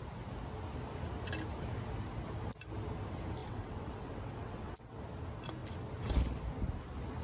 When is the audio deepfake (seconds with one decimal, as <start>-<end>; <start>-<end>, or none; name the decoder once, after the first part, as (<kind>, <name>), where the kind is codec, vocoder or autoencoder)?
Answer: 3.4-5.0 (vocoder, WaveNeXt)

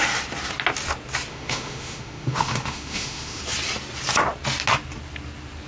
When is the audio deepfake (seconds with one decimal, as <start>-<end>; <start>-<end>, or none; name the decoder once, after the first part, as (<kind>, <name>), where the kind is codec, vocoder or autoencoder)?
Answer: 1.3-3.4 (autoencoder, DAC-VAE)